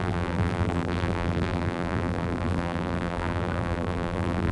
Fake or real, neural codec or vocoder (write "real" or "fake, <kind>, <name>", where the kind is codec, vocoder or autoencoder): fake, vocoder, BigVGAN v2